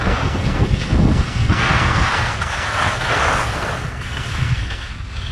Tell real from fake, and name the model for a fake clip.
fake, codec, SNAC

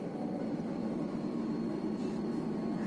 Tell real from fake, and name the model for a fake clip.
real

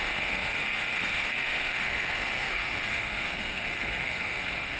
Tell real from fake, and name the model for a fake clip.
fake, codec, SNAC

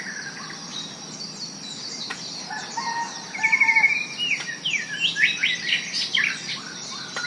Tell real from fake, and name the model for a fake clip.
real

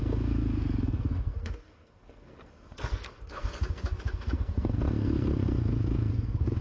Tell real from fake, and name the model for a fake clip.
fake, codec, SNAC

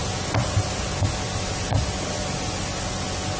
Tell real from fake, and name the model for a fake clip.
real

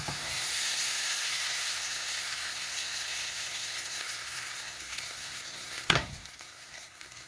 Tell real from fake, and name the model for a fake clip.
fake, codec, SNAC